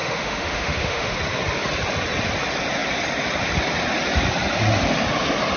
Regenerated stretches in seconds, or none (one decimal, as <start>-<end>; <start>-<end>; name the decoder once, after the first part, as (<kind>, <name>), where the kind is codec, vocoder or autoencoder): 0.0-1.1 (autoencoder, DAC-VAE)